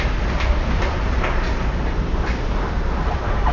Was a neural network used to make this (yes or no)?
no